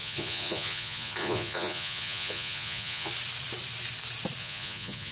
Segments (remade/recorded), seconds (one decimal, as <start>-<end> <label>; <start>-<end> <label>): 0.0-3.1 remade; 3.1-4.4 recorded; 4.4-5.1 remade

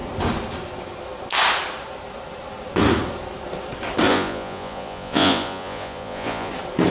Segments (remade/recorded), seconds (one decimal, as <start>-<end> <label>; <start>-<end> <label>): 0.0-4.1 recorded; 4.1-6.5 remade; 6.5-6.9 recorded

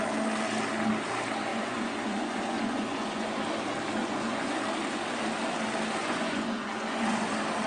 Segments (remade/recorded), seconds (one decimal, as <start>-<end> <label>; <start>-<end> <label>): 0.0-1.5 recorded; 1.5-3.3 remade; 3.3-4.0 recorded; 4.0-4.6 remade; 4.6-6.0 recorded; 6.0-7.3 remade; 7.3-7.7 recorded

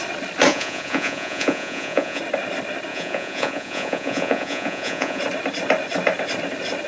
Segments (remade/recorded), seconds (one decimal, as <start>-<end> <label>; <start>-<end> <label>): 0.0-0.5 recorded; 0.5-2.2 remade; 2.2-2.9 recorded; 2.9-5.2 remade; 5.2-6.9 recorded

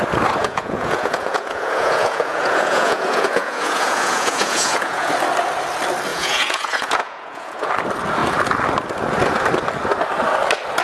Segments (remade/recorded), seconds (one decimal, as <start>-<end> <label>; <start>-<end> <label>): 0.0-0.4 recorded; 0.4-5.1 remade; 5.1-6.1 recorded; 6.1-7.7 remade; 7.7-10.8 recorded

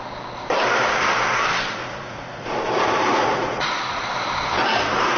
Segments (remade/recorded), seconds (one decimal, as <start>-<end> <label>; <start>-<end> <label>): 0.0-1.8 recorded; 1.8-2.6 remade; 2.6-3.1 recorded; 3.1-4.1 remade; 4.1-5.2 recorded